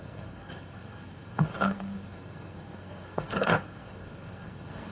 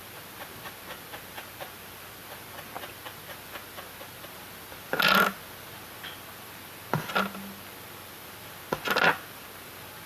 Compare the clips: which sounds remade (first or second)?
first